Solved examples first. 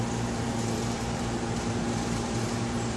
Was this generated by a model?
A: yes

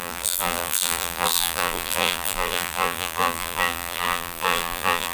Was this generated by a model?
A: yes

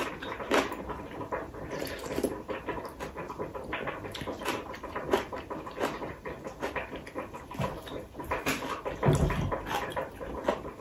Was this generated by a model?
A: yes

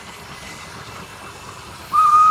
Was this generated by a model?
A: no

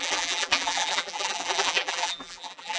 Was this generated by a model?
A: yes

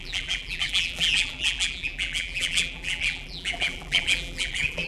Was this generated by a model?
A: yes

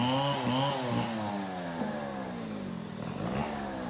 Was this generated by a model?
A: no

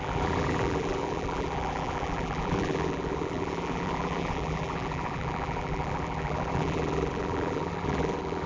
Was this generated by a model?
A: yes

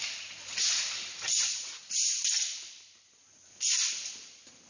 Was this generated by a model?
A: no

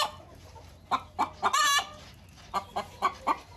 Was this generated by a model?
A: no